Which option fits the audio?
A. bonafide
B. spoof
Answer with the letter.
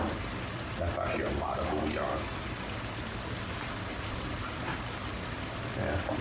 A